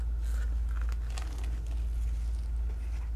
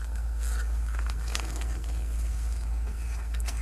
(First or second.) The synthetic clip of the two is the second